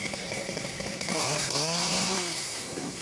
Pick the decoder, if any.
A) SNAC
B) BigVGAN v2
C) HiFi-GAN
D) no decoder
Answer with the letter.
A